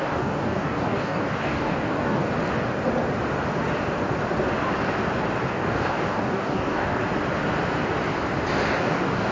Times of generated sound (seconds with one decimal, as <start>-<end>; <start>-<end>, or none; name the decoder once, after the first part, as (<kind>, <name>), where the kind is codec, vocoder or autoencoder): 0.0-2.2 (codec, DAC); 5.5-7.0; 8.8-9.3